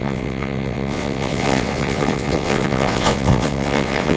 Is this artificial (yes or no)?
yes